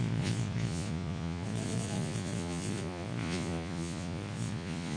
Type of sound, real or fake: fake